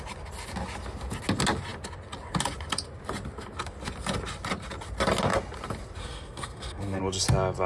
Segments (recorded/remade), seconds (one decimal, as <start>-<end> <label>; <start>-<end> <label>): 0.0-6.0 recorded; 6.0-7.0 remade; 7.0-7.7 recorded